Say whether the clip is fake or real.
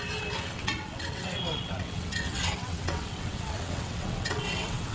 fake